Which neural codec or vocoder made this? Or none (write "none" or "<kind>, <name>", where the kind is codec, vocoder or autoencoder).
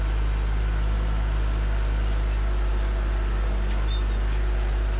none